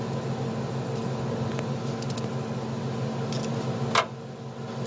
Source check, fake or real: real